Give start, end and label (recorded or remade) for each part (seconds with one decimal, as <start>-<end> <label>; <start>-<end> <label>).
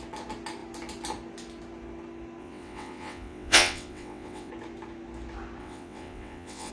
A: 0.0-2.4 recorded; 2.4-4.5 remade; 4.5-5.6 recorded; 5.6-6.7 remade